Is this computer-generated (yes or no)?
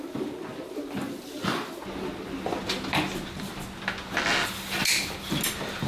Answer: no